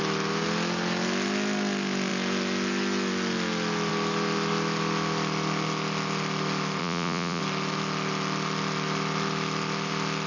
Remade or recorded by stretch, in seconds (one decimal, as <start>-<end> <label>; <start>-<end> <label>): 0.0-6.8 recorded; 6.8-7.4 remade; 7.4-10.3 recorded